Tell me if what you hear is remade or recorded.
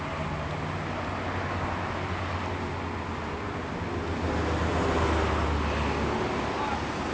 recorded